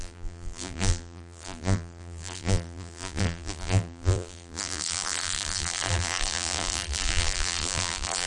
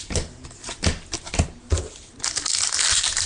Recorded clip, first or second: second